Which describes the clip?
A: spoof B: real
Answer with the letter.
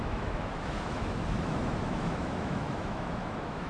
A